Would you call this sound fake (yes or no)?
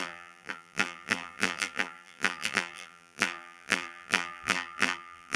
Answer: yes